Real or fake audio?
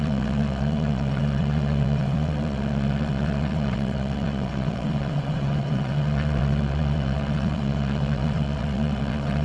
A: fake